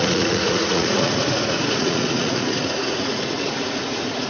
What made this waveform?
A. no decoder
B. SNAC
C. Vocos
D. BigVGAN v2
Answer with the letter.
C